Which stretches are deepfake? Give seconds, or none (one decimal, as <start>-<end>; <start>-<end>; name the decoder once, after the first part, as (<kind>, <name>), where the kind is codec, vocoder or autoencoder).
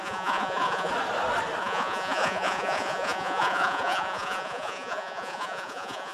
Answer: 0.0-0.9 (vocoder, Vocos); 1.6-6.1